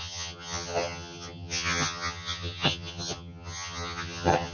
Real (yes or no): no